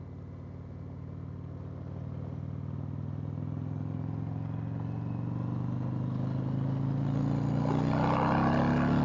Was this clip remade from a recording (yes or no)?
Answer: no